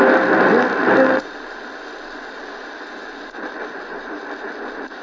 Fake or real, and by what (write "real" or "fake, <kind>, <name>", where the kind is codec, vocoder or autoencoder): real